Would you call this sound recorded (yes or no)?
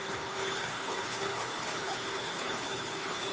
no